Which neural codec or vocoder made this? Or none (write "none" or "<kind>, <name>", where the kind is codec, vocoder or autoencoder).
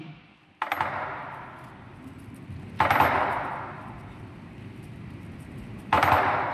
none